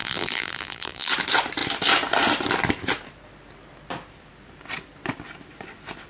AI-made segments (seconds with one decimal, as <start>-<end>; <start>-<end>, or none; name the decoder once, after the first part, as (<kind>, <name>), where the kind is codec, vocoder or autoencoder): 0.0-1.1 (vocoder, BigVGAN v2)

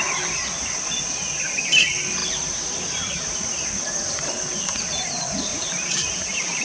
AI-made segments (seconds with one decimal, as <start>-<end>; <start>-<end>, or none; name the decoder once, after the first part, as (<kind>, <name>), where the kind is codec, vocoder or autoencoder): 5.5-6.6 (vocoder, BigVGAN v2)

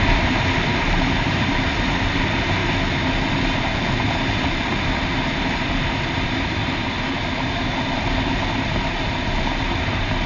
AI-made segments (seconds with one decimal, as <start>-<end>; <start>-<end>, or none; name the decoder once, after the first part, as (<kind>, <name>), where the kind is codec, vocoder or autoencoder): 0.0-2.6 (vocoder, BigVGAN v2); 3.3-10.3

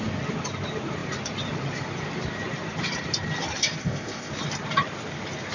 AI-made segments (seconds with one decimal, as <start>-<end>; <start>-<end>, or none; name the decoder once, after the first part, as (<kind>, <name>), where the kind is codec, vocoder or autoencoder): 3.8-4.3 (codec, ZipCodec)

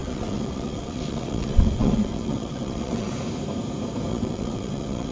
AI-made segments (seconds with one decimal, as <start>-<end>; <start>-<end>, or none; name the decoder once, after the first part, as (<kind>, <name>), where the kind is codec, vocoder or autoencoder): 0.0-3.1 (vocoder, WaveNeXt); 4.1-5.1

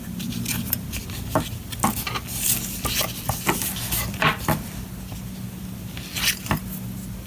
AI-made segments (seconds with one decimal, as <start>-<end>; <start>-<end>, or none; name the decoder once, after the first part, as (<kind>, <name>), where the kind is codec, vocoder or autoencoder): none

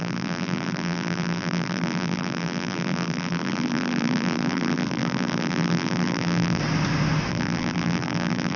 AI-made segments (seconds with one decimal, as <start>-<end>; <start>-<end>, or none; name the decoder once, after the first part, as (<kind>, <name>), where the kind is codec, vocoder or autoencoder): 0.0-6.6 (vocoder, BigVGAN v2); 7.3-8.6

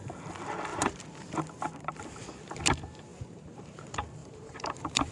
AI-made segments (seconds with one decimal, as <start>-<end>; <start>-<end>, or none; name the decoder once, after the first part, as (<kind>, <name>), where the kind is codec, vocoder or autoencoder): 0.7-2.6 (vocoder, BigVGAN v2); 3.1-3.8; 4.2-5.1